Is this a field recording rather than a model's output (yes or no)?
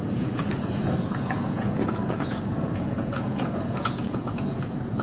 no